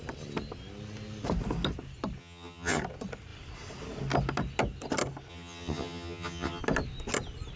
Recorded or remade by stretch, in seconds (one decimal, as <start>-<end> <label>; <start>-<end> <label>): 0.0-2.2 recorded; 2.2-2.8 remade; 2.8-5.3 recorded; 5.3-6.6 remade; 6.6-7.6 recorded